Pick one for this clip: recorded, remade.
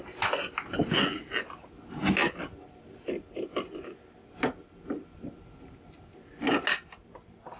recorded